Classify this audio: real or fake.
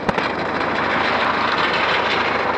real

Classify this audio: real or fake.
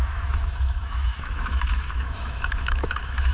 fake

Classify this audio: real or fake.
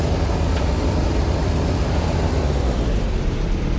real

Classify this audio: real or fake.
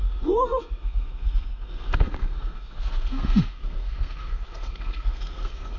fake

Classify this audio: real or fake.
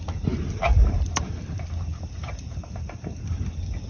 real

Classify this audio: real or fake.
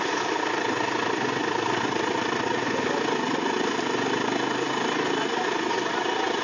real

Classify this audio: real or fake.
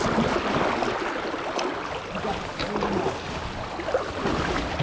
real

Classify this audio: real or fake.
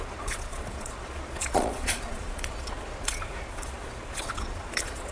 fake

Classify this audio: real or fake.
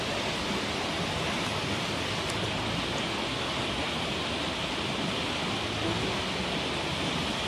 real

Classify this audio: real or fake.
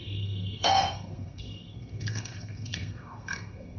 fake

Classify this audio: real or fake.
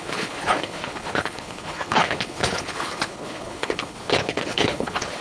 fake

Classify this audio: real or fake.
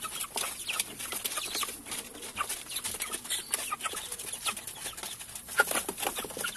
real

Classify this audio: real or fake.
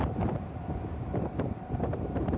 fake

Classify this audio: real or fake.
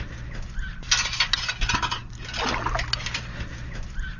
real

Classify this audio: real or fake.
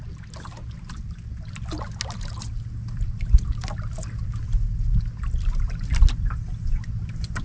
real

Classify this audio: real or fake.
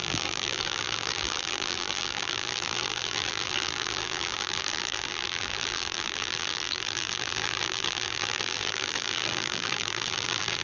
fake